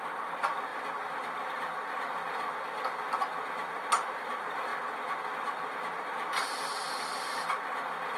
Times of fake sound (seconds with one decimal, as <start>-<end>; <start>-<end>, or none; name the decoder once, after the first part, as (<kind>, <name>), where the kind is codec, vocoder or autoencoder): none